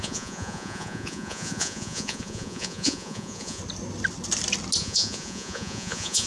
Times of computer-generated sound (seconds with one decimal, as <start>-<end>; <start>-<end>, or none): 0.0-3.6; 4.8-6.3